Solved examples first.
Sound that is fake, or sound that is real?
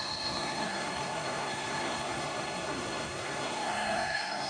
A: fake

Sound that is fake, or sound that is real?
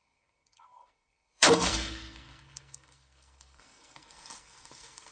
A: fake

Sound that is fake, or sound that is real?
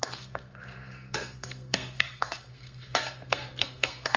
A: fake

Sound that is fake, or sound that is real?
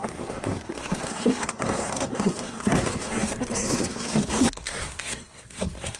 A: fake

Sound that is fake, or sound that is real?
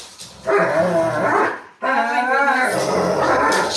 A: real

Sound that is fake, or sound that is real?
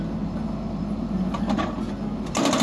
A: real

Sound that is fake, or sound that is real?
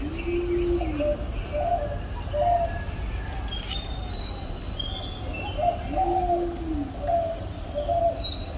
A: real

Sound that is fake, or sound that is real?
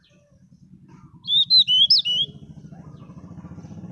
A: real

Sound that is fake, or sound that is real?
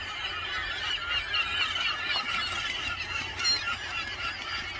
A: real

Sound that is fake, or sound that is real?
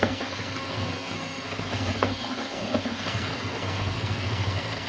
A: fake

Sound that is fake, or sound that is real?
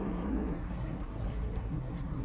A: fake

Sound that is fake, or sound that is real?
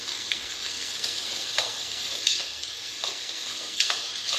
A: fake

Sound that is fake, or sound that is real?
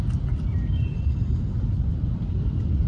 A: real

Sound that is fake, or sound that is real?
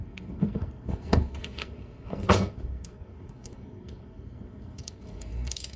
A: fake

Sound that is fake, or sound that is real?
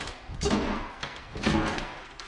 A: fake